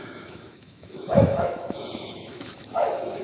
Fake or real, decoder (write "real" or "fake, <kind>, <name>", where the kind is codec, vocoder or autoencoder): fake, autoencoder, DAC-VAE